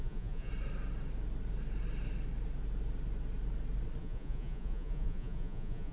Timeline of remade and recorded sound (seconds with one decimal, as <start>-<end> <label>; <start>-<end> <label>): 0.0-0.5 remade; 0.5-4.0 recorded; 4.0-5.9 remade